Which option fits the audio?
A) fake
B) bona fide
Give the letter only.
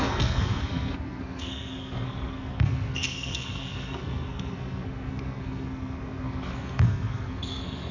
A